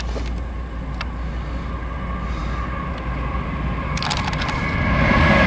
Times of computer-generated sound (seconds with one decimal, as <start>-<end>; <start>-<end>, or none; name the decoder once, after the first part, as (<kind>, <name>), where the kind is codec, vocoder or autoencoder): none